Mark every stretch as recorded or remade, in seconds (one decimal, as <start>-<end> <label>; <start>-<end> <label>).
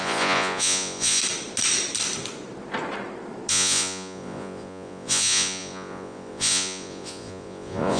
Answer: 0.0-1.2 remade; 1.2-3.5 recorded; 3.5-8.0 remade